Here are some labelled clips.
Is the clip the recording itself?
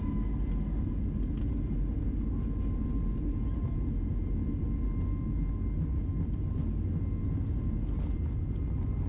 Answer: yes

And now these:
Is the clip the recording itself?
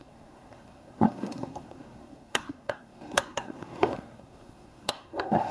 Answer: no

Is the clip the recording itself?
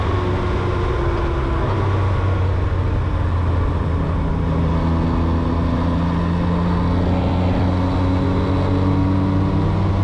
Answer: yes